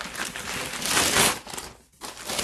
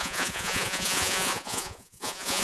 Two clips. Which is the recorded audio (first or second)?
first